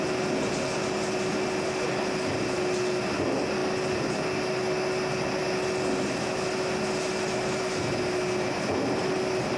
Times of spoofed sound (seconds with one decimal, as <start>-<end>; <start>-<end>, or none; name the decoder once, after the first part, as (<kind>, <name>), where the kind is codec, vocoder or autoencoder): none